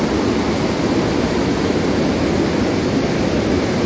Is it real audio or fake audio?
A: real